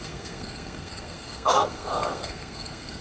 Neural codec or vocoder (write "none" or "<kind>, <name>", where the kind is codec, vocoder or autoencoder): codec, SNAC